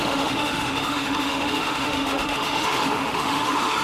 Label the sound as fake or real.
fake